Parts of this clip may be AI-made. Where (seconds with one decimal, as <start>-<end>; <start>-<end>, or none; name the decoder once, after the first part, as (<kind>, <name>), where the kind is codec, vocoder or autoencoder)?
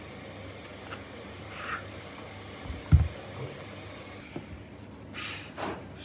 0.7-2.3 (vocoder, BigVGAN v2)